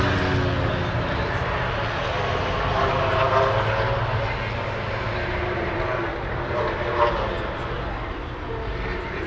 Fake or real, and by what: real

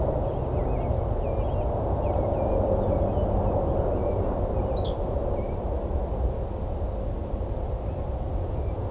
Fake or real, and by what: real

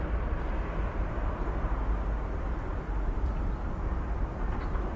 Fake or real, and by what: real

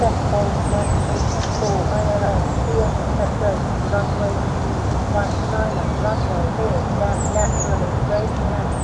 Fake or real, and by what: real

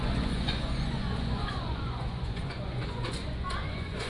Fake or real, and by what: fake, vocoder, Vocos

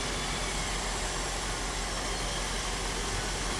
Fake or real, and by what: real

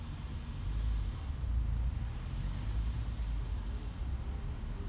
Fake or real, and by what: real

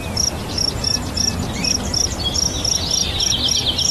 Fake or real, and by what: real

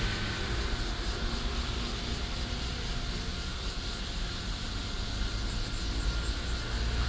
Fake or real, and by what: real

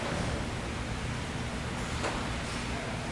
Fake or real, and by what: real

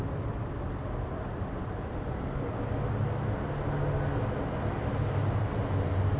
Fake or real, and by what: real